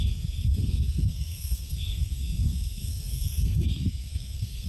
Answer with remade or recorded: remade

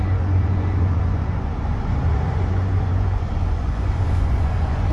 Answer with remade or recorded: remade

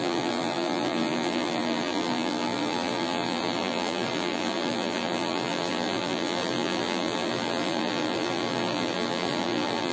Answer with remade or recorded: remade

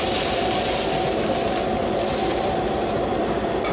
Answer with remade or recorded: recorded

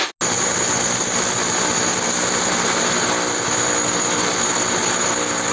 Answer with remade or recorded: recorded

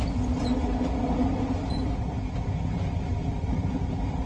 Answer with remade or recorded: recorded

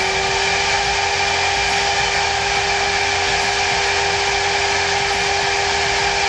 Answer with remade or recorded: recorded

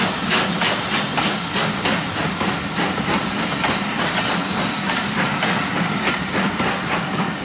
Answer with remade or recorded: recorded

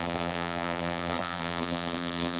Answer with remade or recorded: remade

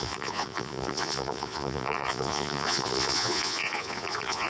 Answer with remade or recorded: remade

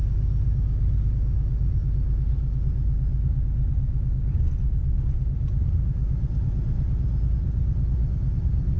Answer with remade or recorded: recorded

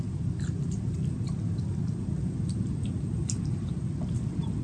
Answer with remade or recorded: recorded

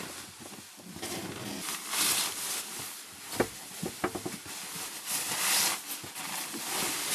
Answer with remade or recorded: recorded